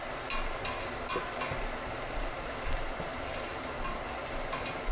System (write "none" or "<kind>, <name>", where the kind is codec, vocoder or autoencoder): none